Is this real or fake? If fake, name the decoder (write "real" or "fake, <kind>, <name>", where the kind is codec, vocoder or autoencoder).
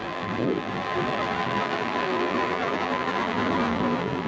fake, vocoder, BigVGAN v2